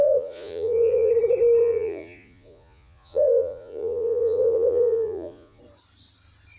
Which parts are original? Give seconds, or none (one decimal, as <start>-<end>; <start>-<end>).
1.1-1.6; 5.6-6.6